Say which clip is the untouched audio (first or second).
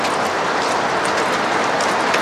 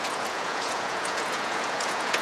first